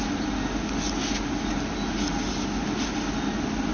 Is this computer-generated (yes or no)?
no